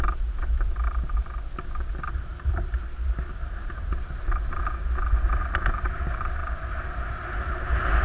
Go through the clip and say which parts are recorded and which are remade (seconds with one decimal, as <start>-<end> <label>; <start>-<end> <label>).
0.0-8.0 recorded